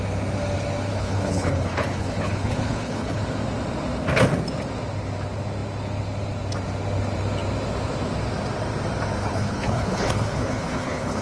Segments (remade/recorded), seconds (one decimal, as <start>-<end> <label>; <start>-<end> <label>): 0.0-0.9 recorded; 0.9-3.2 remade; 3.2-9.2 recorded; 9.2-11.2 remade